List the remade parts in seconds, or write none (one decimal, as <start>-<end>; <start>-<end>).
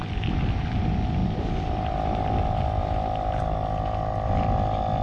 1.2-2.0; 2.8-3.3